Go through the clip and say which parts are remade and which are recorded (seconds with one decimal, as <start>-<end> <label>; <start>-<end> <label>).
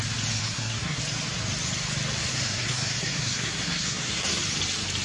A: 0.0-0.4 recorded; 0.4-1.0 remade; 1.0-2.3 recorded; 2.3-4.4 remade; 4.4-5.0 recorded